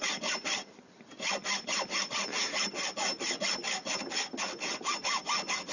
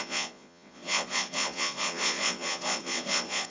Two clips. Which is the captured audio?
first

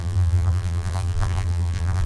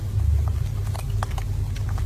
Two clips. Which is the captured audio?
second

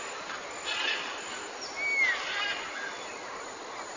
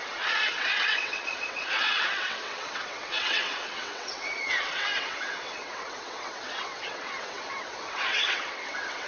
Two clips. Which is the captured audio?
first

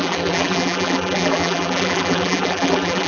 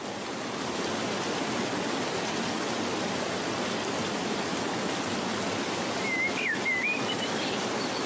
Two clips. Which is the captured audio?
second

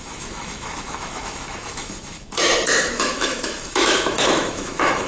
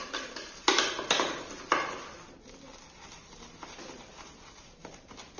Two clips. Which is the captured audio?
second